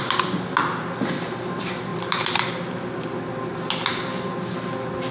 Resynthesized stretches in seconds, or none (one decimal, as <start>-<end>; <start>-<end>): 1.9-2.5